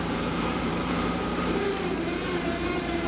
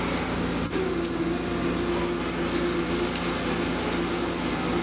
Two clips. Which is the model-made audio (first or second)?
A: first